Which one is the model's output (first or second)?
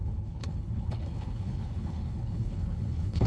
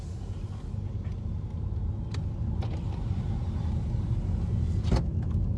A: first